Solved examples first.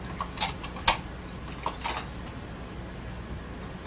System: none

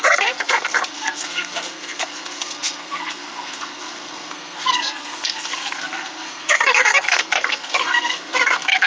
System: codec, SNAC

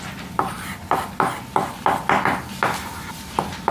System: none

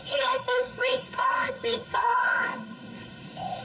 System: codec, SNAC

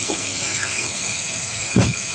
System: codec, SNAC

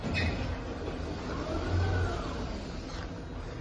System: none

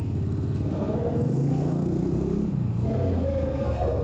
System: codec, SNAC